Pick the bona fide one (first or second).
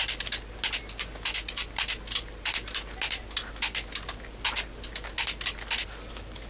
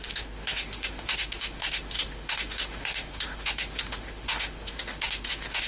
first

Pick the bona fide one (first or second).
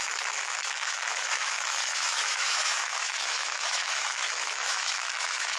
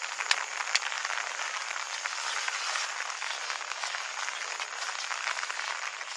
second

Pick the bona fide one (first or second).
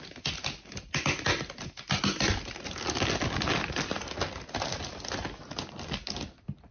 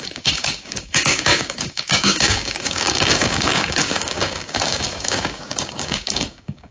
first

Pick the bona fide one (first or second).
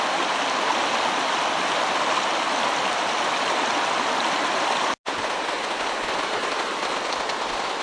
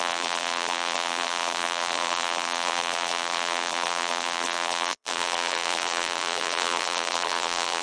first